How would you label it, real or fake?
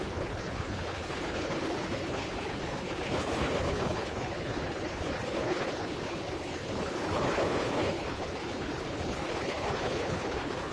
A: fake